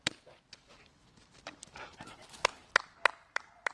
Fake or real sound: real